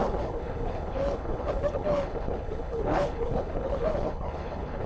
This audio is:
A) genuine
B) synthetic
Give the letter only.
B